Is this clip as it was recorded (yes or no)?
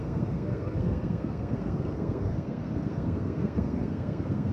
no